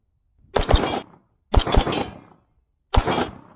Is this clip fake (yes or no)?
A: no